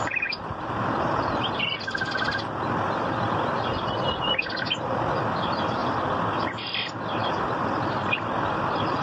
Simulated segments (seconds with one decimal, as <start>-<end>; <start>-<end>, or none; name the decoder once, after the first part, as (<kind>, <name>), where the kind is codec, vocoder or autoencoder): none